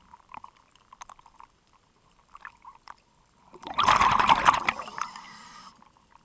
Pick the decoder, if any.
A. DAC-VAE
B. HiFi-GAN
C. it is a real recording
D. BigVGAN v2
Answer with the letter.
D